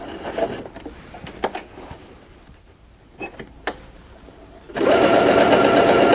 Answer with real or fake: fake